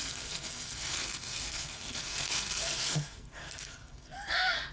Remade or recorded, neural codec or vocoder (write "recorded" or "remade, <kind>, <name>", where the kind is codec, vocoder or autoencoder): remade, codec, SNAC